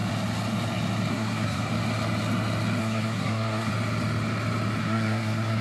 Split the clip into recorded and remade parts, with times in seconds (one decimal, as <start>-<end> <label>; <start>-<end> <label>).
0.0-1.1 recorded; 1.1-1.7 remade; 1.7-2.8 recorded; 2.8-3.7 remade; 3.7-4.8 recorded; 4.8-5.6 remade